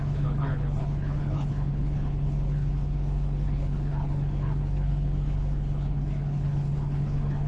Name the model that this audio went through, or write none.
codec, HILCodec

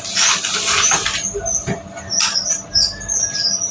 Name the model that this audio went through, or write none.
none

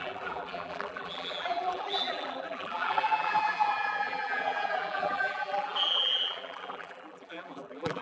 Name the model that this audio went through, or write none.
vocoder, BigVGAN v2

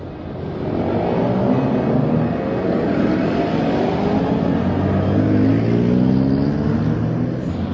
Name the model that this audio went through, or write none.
none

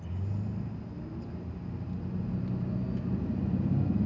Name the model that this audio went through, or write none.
none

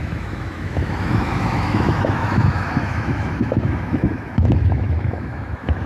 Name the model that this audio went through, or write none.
autoencoder, DAC-VAE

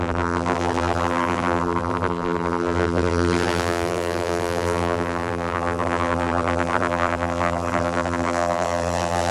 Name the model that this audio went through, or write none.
vocoder, BigVGAN v2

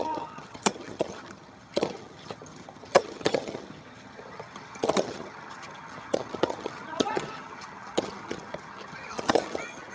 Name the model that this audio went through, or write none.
vocoder, HiFi-GAN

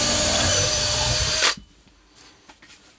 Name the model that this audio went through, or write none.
vocoder, BigVGAN v2